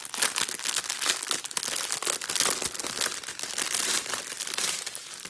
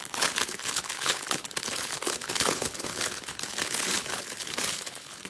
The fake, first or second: second